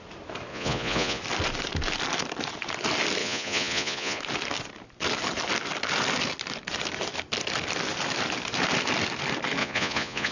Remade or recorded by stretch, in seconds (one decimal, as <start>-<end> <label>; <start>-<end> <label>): 0.0-0.5 recorded; 0.5-1.2 remade; 1.2-3.2 recorded; 3.2-4.2 remade; 4.2-9.6 recorded; 9.6-10.3 remade